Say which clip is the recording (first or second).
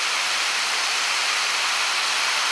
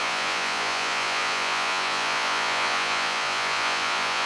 first